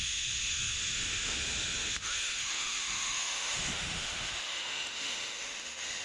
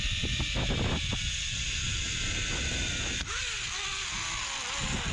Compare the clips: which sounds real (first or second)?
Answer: second